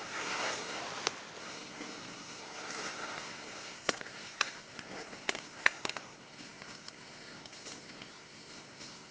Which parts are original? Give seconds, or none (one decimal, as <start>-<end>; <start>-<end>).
0.8-1.4